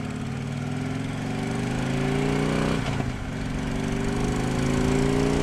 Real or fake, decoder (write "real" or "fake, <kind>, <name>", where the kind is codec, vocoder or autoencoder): real